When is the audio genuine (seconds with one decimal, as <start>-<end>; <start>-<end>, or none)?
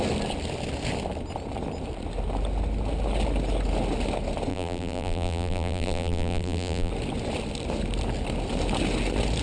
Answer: 0.0-4.5; 6.9-9.4